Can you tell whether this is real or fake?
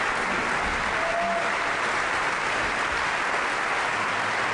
real